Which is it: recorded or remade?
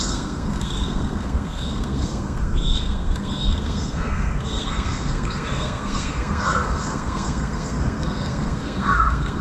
remade